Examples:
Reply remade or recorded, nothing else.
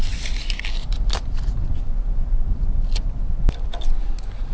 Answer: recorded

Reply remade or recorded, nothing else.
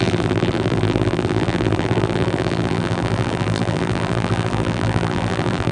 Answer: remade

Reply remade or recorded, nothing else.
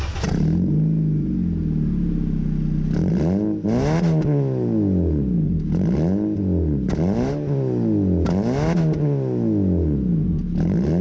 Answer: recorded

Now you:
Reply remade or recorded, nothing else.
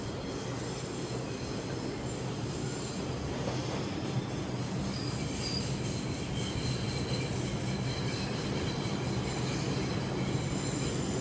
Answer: recorded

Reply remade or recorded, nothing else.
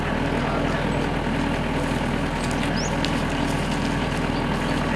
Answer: recorded